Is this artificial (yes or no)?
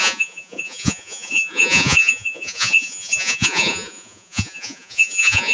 yes